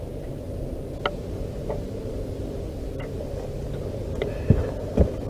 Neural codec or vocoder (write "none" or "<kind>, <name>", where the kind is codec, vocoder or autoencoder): none